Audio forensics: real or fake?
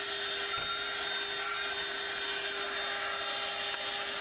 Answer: real